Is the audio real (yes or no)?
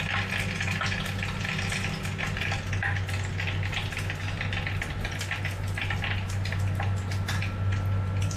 yes